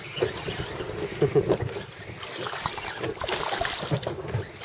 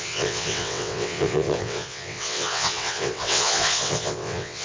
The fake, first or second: second